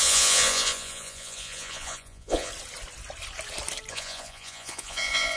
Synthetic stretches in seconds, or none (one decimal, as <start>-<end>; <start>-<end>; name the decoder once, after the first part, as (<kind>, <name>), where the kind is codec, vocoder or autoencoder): 0.0-2.5 (vocoder, Vocos); 3.9-5.4